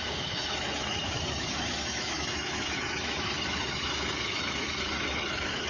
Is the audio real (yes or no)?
no